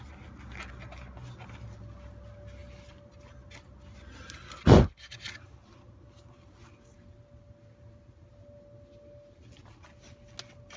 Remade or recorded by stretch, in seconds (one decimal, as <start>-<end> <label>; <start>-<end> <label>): 0.0-10.8 recorded